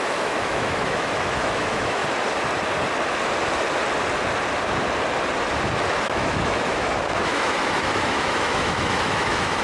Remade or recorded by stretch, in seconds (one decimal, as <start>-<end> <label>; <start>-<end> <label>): 0.0-2.0 remade; 2.0-6.0 recorded; 6.0-9.6 remade